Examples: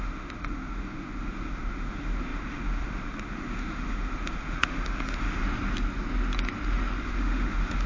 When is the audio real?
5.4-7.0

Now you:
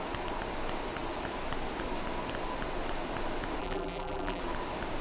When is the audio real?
0.0-3.6; 4.4-5.0

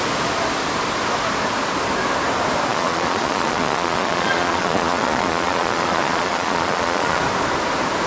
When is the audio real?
0.0-2.7; 7.2-8.1

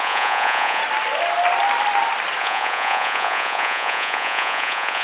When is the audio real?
0.8-2.4

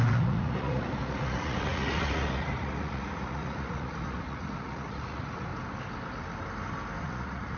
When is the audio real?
5.5-7.0

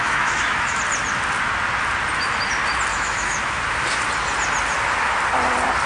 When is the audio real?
0.8-2.9; 3.6-5.9

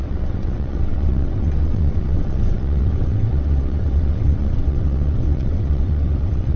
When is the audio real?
none

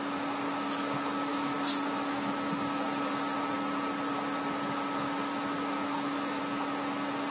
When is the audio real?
0.0-1.3; 3.2-5.8; 6.4-7.3